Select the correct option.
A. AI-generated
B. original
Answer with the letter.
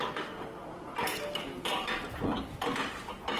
B